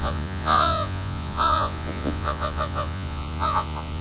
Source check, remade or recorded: remade